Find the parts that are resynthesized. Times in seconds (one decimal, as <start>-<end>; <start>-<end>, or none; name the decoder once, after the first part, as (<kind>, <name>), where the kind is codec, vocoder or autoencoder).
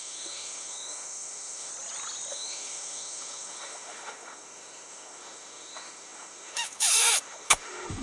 0.0-1.7 (autoencoder, DAC-VAE); 2.3-8.0